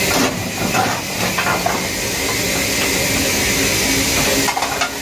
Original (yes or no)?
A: yes